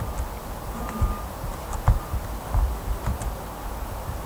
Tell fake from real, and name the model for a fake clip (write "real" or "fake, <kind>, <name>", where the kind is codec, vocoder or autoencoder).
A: real